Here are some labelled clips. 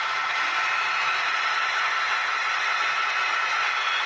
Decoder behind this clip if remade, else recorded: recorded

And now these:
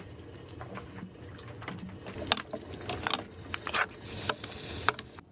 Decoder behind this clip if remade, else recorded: recorded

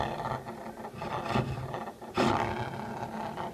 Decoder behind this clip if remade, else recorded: recorded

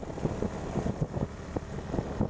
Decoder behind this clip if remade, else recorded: recorded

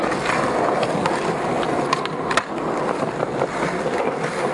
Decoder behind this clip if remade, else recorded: recorded